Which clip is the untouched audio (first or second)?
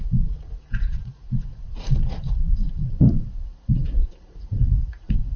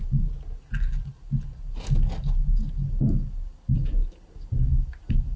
second